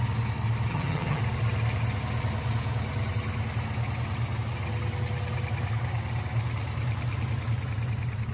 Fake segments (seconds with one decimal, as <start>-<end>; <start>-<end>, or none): 0.7-1.2